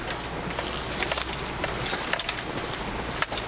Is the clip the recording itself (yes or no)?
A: yes